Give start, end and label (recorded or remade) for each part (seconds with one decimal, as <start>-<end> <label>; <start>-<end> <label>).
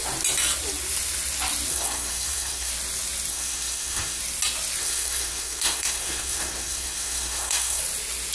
0.0-1.7 recorded; 1.7-2.7 remade; 2.7-3.3 recorded; 3.3-4.2 remade; 4.2-4.8 recorded; 4.8-7.8 remade; 7.8-8.3 recorded